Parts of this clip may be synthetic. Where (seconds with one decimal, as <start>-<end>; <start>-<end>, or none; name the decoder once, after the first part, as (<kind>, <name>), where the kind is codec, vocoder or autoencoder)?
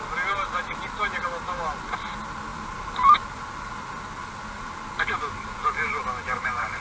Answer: none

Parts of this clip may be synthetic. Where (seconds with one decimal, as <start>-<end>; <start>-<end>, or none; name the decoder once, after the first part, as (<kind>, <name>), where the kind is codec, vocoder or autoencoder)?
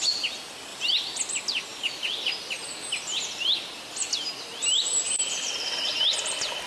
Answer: 0.7-1.2 (vocoder, BigVGAN v2); 4.6-5.9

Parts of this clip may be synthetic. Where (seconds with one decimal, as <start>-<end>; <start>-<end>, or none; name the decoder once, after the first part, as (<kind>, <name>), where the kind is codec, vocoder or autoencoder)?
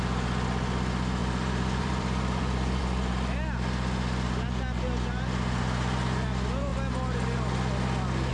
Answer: 1.2-2.8 (vocoder, BigVGAN v2)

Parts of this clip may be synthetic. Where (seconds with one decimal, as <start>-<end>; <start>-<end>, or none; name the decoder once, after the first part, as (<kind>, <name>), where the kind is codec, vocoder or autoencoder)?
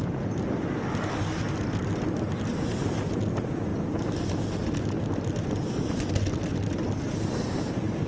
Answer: 6.5-8.1 (vocoder, BigVGAN v2)